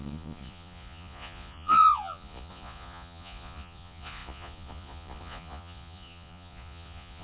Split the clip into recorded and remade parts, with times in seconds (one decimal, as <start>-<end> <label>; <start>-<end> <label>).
0.0-7.2 remade